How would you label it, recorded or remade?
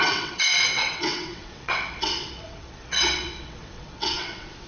remade